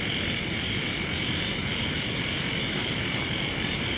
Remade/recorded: recorded